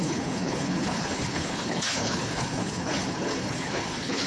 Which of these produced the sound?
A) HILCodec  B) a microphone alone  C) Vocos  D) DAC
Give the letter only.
A